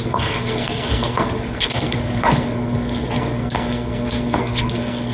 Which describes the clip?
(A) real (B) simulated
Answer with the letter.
B